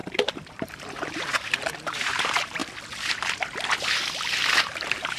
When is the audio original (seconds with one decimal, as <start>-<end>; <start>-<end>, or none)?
2.6-4.6